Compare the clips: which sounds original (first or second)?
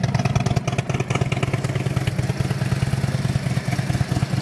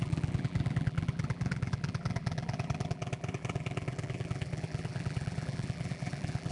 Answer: first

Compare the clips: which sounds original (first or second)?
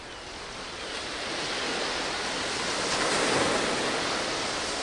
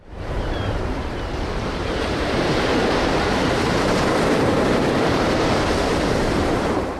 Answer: first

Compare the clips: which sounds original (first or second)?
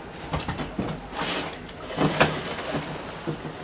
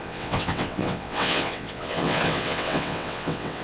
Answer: first